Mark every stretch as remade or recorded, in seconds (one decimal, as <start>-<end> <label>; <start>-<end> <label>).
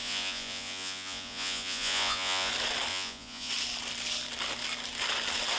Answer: 0.0-2.5 remade; 2.5-2.9 recorded; 2.9-3.5 remade; 3.5-5.6 recorded